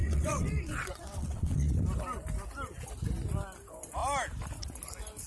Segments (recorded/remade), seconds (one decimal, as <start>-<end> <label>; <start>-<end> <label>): 0.0-1.7 remade; 1.7-5.3 recorded